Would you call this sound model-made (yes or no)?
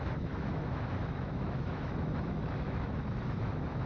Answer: yes